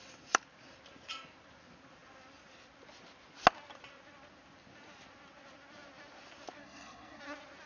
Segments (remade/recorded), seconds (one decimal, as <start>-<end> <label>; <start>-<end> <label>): 0.0-6.6 recorded; 6.6-7.2 remade; 7.2-7.7 recorded